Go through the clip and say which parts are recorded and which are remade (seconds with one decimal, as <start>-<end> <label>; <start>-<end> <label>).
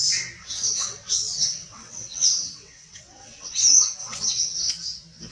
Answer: 0.0-0.4 recorded; 0.4-3.6 remade; 3.6-4.0 recorded; 4.0-4.7 remade; 4.7-5.3 recorded